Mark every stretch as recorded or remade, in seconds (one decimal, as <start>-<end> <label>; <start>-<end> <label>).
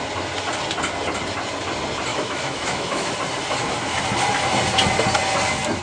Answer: 0.0-2.1 recorded; 2.1-3.1 remade; 3.1-5.8 recorded